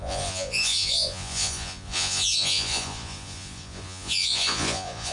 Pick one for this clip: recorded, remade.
remade